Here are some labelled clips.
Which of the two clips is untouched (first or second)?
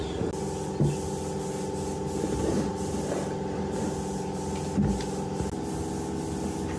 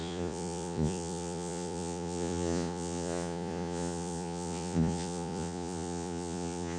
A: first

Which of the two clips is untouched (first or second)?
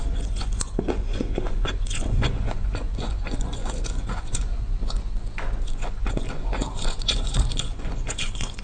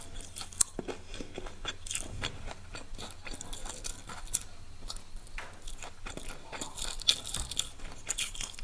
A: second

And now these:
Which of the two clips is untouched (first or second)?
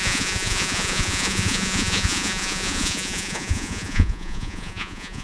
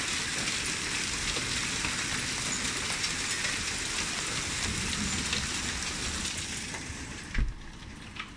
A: second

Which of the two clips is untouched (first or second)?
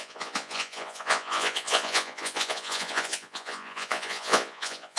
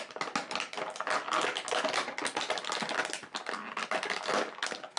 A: second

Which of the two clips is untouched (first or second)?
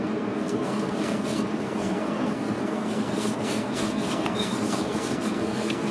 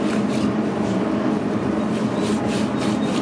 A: second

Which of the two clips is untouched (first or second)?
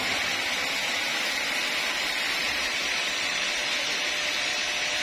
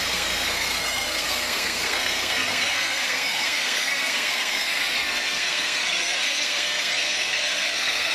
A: first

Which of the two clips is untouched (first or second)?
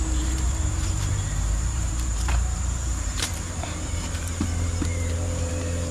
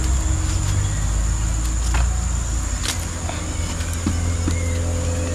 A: second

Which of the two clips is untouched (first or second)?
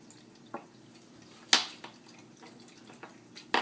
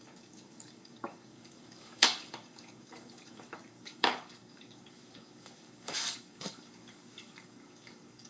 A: first